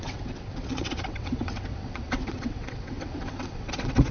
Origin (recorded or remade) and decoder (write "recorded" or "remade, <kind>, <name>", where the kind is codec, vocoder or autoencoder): remade, vocoder, WaveNeXt